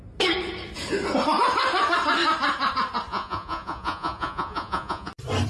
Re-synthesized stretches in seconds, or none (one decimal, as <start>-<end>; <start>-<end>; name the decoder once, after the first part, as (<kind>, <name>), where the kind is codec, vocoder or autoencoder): 3.1-5.1 (vocoder, Vocos)